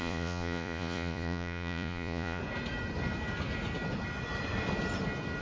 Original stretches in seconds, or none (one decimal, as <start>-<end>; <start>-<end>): 2.4-5.4